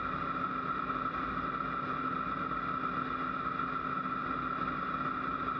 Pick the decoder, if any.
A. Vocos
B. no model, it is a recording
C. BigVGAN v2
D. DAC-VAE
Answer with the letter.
B